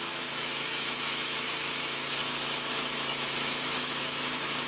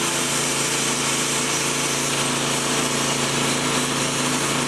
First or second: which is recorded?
second